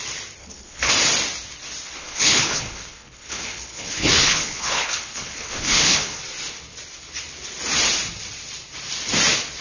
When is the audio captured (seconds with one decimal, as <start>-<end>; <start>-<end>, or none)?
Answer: 0.0-0.4; 0.9-2.0; 6.2-9.6